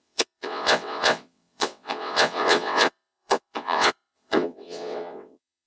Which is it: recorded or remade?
remade